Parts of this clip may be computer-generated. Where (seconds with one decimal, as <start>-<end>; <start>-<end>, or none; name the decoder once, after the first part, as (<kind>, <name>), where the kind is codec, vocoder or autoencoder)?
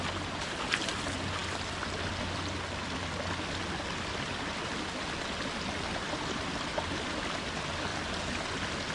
none